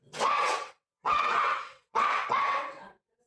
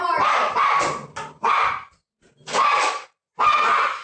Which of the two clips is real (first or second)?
second